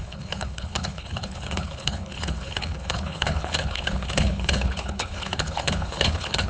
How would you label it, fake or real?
fake